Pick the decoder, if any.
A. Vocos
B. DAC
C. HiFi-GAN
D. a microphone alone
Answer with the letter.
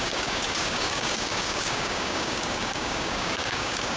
B